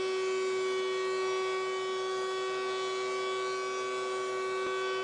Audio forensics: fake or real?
real